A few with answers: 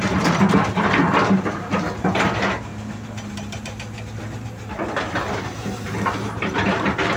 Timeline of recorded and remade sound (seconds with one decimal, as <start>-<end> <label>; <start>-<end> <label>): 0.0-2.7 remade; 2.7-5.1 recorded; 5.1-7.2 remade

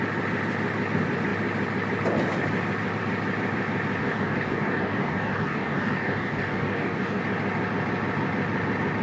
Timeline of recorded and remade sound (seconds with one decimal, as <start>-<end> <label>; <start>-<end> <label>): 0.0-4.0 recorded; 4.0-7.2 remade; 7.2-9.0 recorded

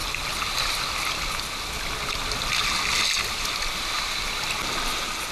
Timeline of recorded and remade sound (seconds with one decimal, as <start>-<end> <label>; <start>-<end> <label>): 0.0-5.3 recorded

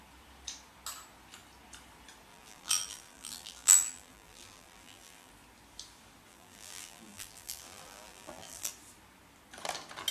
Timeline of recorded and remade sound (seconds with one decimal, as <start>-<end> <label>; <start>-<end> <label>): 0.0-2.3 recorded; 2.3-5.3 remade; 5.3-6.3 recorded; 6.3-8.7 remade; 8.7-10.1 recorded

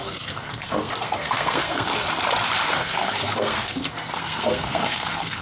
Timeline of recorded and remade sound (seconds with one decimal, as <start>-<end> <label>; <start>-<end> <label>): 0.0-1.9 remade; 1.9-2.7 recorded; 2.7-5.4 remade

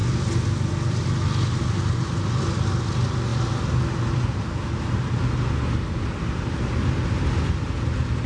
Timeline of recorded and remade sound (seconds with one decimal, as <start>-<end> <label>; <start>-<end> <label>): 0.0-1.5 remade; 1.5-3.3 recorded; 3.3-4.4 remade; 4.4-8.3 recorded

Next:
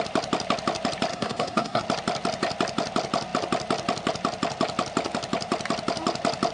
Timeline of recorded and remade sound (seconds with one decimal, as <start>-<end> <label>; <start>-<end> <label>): 0.0-1.1 recorded; 1.1-1.8 remade; 1.8-6.5 recorded

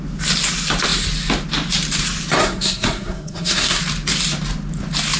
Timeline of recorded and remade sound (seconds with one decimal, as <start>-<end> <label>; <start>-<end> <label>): 0.0-2.4 recorded; 2.4-3.8 remade; 3.8-5.2 recorded